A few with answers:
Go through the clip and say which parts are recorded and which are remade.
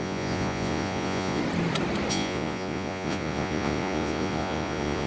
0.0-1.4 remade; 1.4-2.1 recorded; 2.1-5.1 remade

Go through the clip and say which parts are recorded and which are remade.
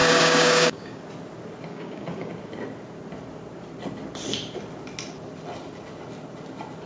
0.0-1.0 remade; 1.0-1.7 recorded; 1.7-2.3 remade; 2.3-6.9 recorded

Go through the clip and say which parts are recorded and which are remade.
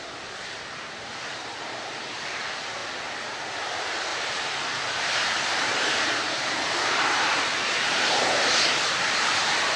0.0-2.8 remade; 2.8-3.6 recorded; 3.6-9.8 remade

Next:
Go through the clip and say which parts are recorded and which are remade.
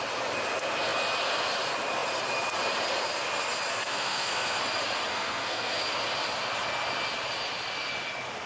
0.0-3.7 recorded; 3.7-4.6 remade; 4.6-5.1 recorded; 5.1-5.8 remade; 5.8-8.5 recorded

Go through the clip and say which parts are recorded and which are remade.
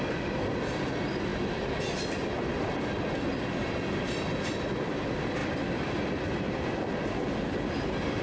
0.0-8.2 recorded